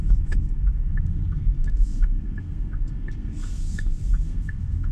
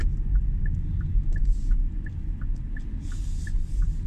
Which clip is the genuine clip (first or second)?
second